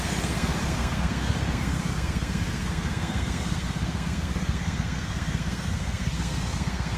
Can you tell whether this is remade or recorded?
remade